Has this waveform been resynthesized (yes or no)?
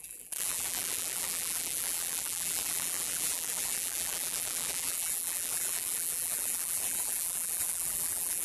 yes